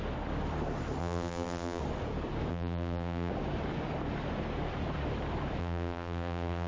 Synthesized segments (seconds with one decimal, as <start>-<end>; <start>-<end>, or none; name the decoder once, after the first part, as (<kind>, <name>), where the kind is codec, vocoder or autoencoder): 1.0-1.8 (vocoder, BigVGAN v2); 2.5-3.3; 5.6-6.7